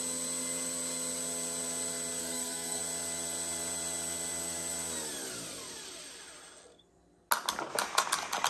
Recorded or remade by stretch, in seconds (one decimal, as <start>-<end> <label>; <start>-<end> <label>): 0.0-2.2 recorded; 2.2-2.8 remade; 2.8-8.5 recorded